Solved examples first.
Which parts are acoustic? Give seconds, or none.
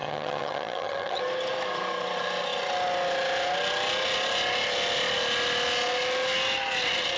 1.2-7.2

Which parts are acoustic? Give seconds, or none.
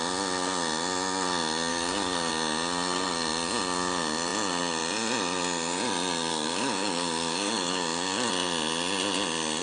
0.0-1.7; 2.3-6.3; 8.3-9.6